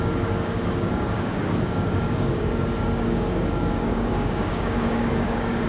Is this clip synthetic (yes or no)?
yes